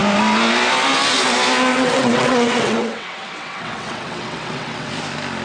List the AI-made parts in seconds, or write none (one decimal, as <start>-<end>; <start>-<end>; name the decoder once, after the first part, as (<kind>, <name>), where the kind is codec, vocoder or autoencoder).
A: 1.7-4.9 (vocoder, WaveNeXt)